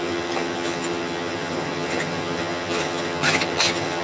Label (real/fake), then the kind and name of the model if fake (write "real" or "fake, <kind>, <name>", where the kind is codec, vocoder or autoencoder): fake, vocoder, HiFi-GAN